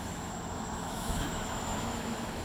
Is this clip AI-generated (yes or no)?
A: yes